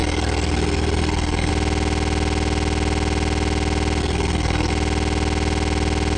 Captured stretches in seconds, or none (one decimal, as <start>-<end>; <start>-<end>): 1.5-4.0; 4.7-6.2